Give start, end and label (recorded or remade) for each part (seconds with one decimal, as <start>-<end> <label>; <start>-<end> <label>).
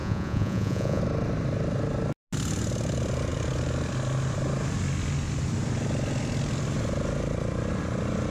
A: 0.0-1.0 remade; 1.0-8.3 recorded